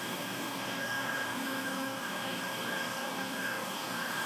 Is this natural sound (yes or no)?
no